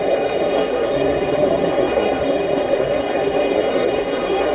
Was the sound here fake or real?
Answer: fake